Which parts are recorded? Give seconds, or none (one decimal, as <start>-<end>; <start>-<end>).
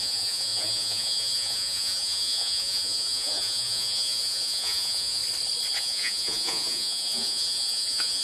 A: 5.2-5.8